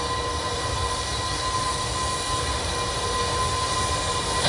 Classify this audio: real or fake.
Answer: real